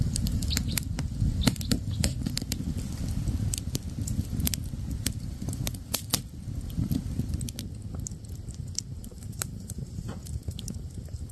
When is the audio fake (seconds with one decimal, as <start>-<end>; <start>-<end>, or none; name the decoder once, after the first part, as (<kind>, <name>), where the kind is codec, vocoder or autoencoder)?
0.0-0.4 (vocoder, BigVGAN v2); 5.2-6.1; 9.0-11.3